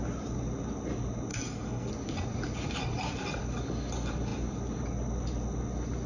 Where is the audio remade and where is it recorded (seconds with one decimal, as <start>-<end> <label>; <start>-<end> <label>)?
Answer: 0.0-1.3 recorded; 1.3-1.9 remade; 1.9-6.1 recorded